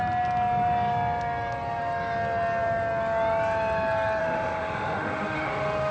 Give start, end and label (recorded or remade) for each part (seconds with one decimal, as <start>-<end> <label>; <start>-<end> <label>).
0.0-4.2 recorded; 4.2-5.9 remade